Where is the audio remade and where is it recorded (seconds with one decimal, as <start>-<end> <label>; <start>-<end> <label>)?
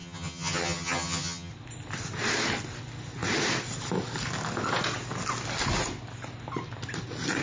0.0-1.5 remade; 1.5-7.4 recorded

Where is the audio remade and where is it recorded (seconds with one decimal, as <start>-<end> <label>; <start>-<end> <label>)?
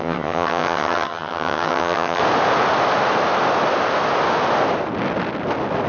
0.0-2.2 remade; 2.2-5.9 recorded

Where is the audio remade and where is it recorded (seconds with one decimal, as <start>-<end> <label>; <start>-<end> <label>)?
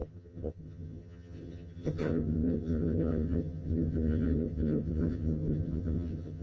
0.0-6.4 remade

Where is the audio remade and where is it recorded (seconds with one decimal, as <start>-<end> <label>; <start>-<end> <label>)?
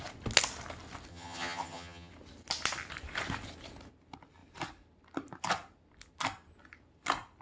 0.0-1.1 recorded; 1.1-2.1 remade; 2.1-7.4 recorded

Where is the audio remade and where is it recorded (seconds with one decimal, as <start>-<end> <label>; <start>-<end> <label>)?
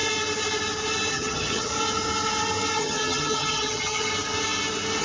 0.0-1.1 recorded; 1.1-1.7 remade; 1.7-2.8 recorded; 2.8-4.1 remade; 4.1-5.0 recorded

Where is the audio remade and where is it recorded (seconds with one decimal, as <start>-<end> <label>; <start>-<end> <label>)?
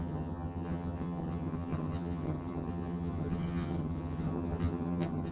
0.0-5.3 remade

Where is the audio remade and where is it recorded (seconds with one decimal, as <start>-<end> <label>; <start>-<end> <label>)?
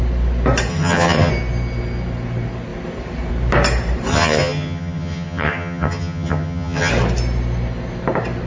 0.0-0.7 recorded; 0.7-1.3 remade; 1.3-4.1 recorded; 4.1-6.9 remade; 6.9-8.5 recorded